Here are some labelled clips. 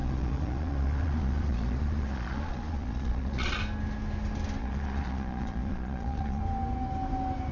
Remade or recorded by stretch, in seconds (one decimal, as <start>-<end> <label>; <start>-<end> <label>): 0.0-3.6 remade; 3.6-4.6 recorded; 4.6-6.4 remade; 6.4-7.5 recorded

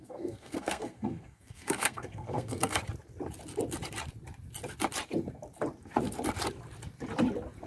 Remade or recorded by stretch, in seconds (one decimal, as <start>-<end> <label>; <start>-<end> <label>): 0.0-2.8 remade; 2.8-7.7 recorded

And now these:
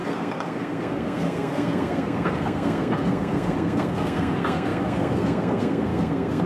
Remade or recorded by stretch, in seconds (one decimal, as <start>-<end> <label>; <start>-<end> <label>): 0.0-6.5 remade

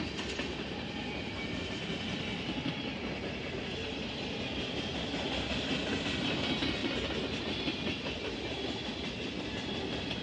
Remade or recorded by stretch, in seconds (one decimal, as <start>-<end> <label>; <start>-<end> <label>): 0.0-10.2 recorded

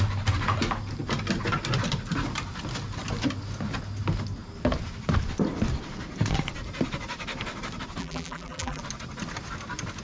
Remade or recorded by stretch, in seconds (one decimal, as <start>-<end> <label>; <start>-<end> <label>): 0.0-8.0 recorded; 8.0-8.8 remade; 8.8-10.0 recorded

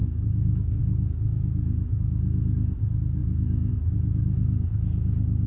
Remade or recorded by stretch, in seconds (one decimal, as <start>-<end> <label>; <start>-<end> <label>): 0.0-0.8 remade; 0.8-5.5 recorded

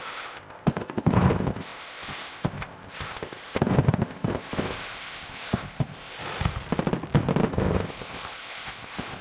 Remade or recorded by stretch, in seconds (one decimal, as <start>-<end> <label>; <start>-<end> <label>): 0.0-6.2 remade; 6.2-7.5 recorded; 7.5-9.2 remade